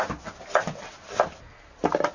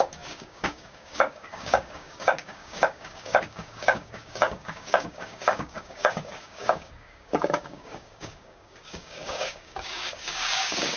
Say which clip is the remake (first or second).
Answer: second